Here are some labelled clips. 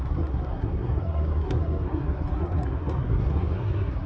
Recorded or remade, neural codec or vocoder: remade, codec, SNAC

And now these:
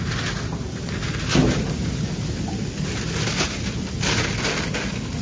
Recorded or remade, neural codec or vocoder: recorded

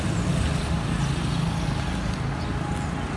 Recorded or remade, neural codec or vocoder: recorded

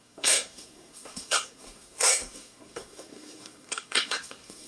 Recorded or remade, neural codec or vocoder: remade, codec, SNAC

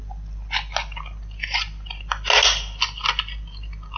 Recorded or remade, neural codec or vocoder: recorded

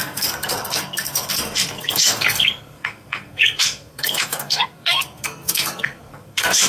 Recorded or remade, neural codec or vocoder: remade, codec, SNAC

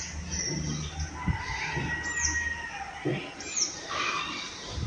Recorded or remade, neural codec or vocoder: recorded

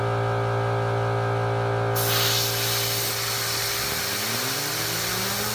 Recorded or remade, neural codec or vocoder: recorded